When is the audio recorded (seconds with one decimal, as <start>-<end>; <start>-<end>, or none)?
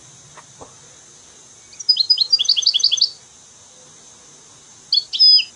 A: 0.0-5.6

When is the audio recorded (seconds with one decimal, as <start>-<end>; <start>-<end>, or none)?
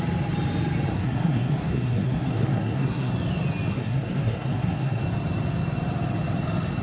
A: 0.0-0.9; 3.1-3.7; 5.0-6.8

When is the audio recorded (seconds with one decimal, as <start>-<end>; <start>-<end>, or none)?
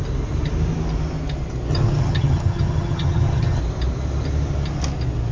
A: 0.0-1.7; 3.6-5.3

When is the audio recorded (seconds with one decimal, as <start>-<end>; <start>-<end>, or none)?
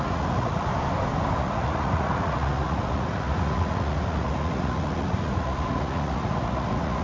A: 0.7-1.4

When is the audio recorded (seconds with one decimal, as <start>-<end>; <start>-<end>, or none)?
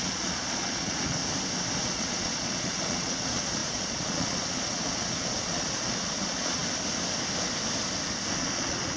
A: 1.2-1.8; 6.6-8.4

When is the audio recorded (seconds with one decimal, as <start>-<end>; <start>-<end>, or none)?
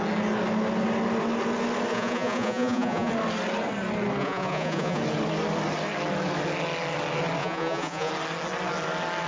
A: 0.0-1.9; 3.1-4.2; 5.0-7.4; 8.1-9.3